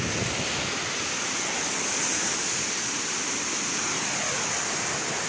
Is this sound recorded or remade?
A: recorded